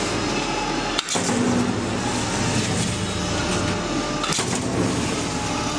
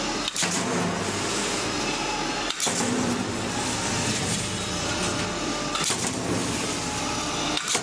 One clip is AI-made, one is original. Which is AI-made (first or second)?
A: second